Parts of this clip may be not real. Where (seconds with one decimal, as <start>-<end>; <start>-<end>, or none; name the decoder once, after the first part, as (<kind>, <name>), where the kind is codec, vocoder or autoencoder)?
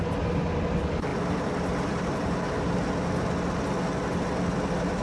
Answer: none